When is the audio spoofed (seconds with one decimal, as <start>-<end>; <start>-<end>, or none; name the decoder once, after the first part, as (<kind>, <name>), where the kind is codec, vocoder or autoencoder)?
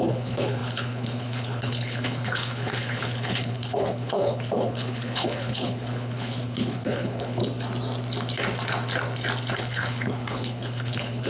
0.0-7.4 (codec, HILCodec); 9.5-11.3